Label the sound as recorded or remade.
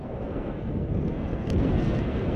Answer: remade